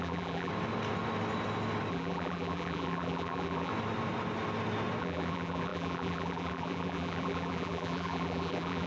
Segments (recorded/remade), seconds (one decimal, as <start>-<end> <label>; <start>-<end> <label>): 0.0-0.5 remade; 0.5-1.9 recorded; 1.9-3.7 remade; 3.7-5.0 recorded; 5.0-8.9 remade